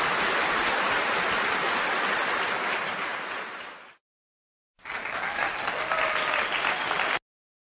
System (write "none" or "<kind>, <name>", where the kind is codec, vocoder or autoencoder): none